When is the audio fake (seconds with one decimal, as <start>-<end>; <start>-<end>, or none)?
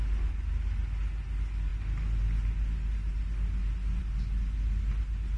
none